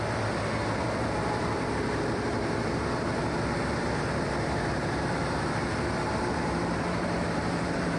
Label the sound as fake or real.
fake